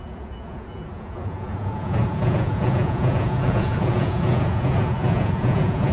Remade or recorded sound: remade